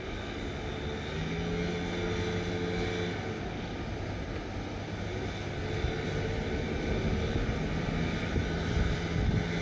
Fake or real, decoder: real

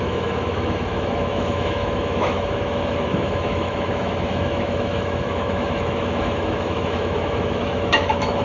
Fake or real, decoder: fake, autoencoder, DAC-VAE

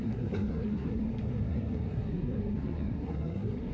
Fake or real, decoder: fake, codec, SNAC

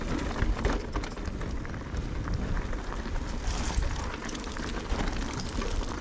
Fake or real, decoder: real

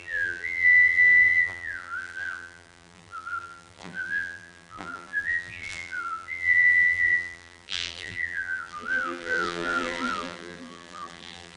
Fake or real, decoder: fake, vocoder, BigVGAN v2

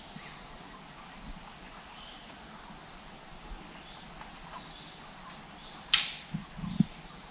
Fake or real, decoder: real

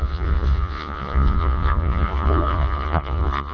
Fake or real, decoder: fake, vocoder, Vocos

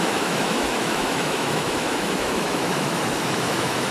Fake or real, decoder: fake, autoencoder, DAC-VAE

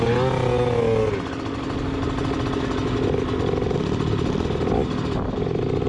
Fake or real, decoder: real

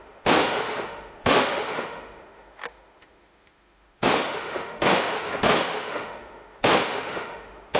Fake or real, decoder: fake, autoencoder, DAC-VAE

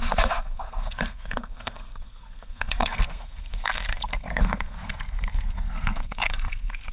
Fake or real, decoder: fake, codec, SNAC